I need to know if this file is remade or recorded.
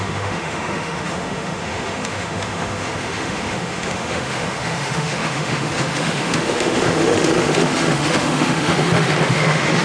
remade